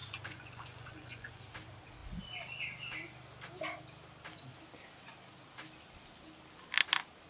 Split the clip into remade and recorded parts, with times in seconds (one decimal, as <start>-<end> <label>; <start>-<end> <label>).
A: 0.0-1.4 remade; 1.4-7.3 recorded